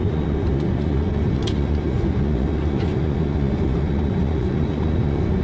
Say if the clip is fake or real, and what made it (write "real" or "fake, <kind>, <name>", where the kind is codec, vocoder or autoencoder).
fake, vocoder, Vocos